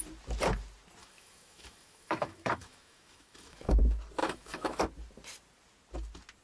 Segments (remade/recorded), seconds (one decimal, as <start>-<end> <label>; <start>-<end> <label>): 0.0-1.0 recorded; 1.0-3.8 remade; 3.8-4.2 recorded; 4.2-4.8 remade; 4.8-6.4 recorded